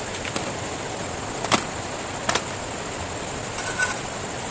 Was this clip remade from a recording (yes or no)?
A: no